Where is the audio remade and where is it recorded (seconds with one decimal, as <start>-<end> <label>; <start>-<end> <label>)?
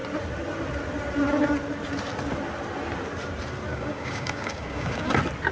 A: 0.0-3.7 recorded; 3.7-5.1 remade; 5.1-5.5 recorded